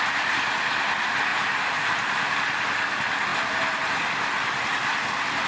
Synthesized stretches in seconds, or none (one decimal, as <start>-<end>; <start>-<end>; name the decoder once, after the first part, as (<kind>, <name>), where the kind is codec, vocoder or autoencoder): 1.3-2.3 (vocoder, BigVGAN v2)